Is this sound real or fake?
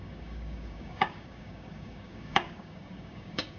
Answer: fake